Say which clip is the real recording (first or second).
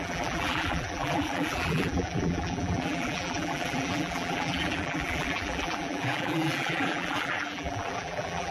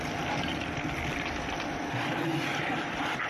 second